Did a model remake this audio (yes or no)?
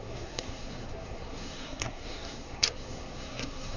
yes